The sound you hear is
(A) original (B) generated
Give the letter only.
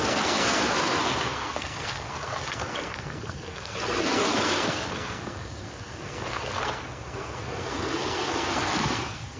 B